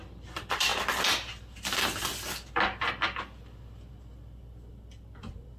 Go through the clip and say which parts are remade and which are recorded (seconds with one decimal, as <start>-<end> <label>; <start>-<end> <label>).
0.0-5.6 recorded

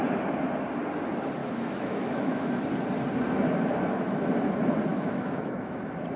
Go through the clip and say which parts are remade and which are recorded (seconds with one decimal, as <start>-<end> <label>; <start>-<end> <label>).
0.0-1.4 recorded; 1.4-2.6 remade; 2.6-4.9 recorded; 4.9-5.8 remade; 5.8-6.2 recorded

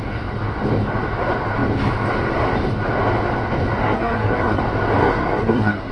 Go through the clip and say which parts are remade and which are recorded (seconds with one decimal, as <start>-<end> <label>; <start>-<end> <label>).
0.0-3.8 recorded; 3.8-4.6 remade; 4.6-5.0 recorded; 5.0-5.9 remade

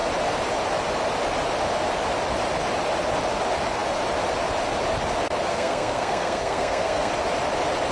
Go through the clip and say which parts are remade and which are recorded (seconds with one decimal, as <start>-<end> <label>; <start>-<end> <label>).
0.0-5.5 recorded; 5.5-7.1 remade; 7.1-7.9 recorded

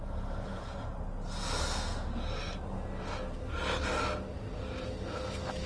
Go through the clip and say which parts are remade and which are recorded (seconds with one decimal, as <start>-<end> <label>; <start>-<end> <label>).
0.0-5.7 recorded

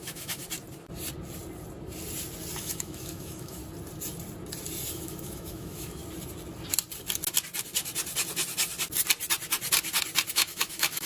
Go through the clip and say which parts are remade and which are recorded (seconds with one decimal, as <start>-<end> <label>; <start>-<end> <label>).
0.0-0.4 remade; 0.4-2.6 recorded; 2.6-3.6 remade; 3.6-4.9 recorded; 4.9-6.0 remade; 6.0-10.3 recorded; 10.3-11.1 remade

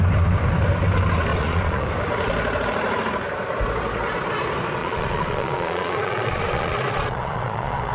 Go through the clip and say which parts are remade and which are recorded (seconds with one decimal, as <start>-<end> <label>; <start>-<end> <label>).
0.0-1.3 recorded; 1.3-1.9 remade; 1.9-4.8 recorded; 4.8-7.9 remade

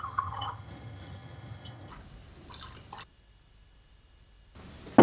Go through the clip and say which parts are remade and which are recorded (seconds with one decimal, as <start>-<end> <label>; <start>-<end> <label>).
0.0-1.9 remade; 1.9-5.0 recorded